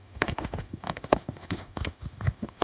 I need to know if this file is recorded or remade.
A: remade